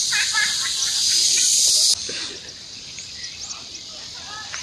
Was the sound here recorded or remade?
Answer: recorded